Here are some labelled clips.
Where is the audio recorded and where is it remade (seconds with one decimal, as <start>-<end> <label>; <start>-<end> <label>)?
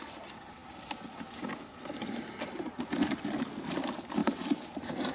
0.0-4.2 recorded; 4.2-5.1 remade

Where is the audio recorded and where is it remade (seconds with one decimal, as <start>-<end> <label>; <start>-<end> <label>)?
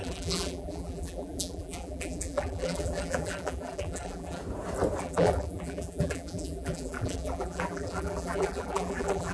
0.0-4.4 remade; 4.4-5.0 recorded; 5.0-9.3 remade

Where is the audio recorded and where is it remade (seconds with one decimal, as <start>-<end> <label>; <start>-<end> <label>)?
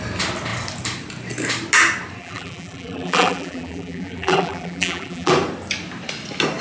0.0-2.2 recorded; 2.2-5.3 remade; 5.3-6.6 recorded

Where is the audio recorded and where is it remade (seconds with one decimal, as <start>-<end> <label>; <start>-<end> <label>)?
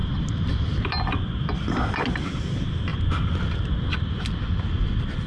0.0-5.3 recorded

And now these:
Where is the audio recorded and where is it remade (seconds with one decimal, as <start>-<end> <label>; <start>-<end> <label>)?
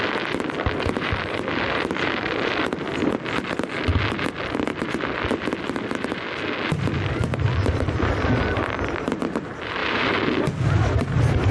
0.0-3.9 remade; 3.9-8.1 recorded; 8.1-11.5 remade